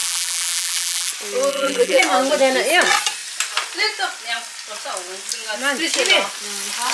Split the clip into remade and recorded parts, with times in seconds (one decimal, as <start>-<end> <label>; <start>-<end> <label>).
0.0-1.1 remade; 1.1-1.5 recorded; 1.5-2.0 remade; 2.0-6.9 recorded